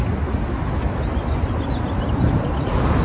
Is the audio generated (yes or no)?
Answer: no